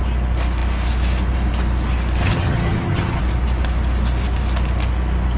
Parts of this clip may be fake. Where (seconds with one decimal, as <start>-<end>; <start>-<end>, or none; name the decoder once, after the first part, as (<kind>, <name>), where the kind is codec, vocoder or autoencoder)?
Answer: 2.2-3.2 (vocoder, HiFi-GAN)